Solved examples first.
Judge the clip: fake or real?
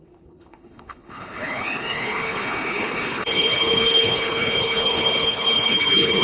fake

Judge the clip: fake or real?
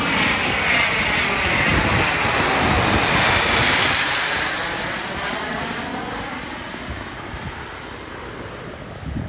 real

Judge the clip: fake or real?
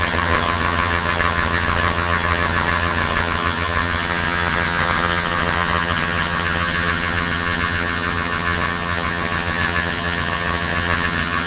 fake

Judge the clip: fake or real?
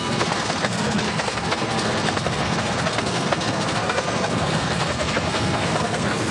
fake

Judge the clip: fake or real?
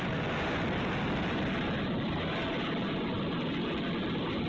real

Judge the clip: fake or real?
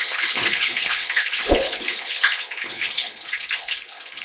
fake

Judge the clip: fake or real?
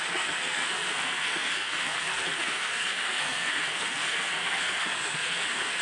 fake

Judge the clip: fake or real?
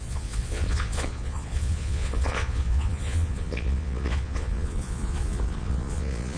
fake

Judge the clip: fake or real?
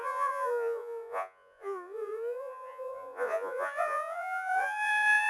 fake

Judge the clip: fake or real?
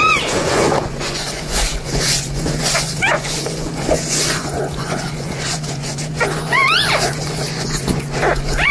fake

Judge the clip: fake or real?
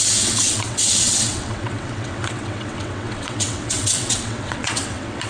fake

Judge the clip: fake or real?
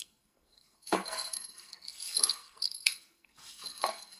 fake